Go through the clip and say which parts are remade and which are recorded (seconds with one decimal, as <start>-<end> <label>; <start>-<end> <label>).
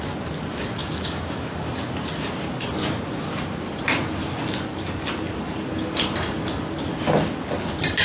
0.0-0.8 recorded; 0.8-1.5 remade; 1.5-8.0 recorded